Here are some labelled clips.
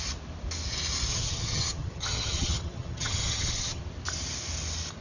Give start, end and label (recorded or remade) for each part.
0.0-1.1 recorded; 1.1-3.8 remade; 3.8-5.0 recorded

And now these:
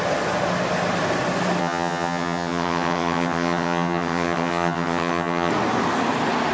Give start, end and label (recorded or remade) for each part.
0.0-1.6 recorded; 1.6-5.5 remade; 5.5-6.5 recorded

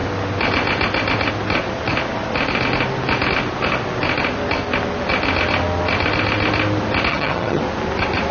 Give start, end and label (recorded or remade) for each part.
0.0-7.1 recorded; 7.1-7.6 remade; 7.6-8.3 recorded

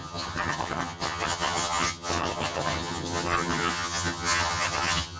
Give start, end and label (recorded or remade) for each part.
0.0-5.2 remade

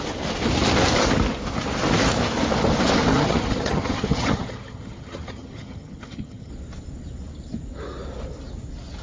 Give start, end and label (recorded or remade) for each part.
0.0-3.1 recorded; 3.1-6.5 remade; 6.5-9.0 recorded

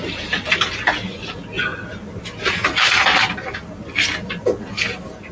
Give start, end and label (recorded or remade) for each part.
0.0-5.3 recorded

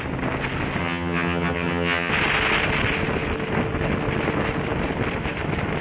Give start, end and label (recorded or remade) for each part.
0.0-0.8 recorded; 0.8-2.1 remade; 2.1-5.8 recorded